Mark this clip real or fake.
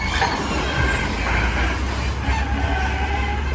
real